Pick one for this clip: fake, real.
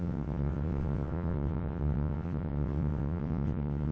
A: fake